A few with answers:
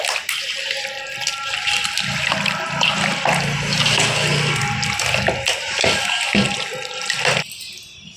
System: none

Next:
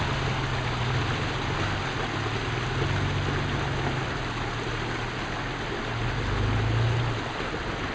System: none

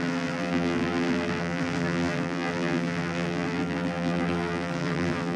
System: vocoder, BigVGAN v2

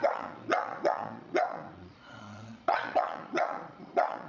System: vocoder, Vocos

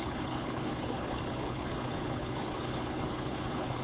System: codec, HILCodec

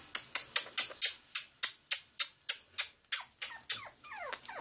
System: none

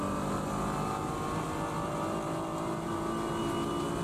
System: none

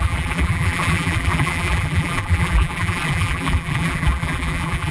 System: vocoder, BigVGAN v2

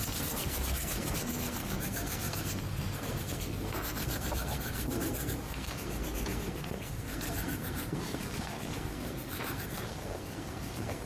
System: codec, SNAC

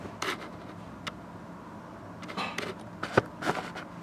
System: none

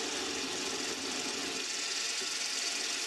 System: none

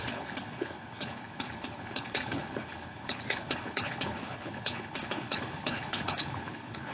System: codec, HILCodec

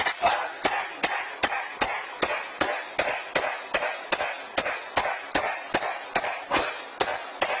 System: none